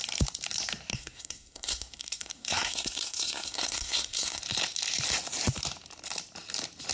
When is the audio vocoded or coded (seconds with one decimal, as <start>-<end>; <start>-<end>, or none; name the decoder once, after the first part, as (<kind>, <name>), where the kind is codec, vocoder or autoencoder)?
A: 0.9-4.4 (codec, SNAC)